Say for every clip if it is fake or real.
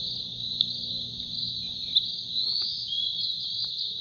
real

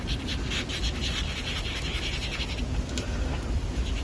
real